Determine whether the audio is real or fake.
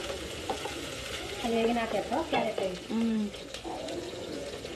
fake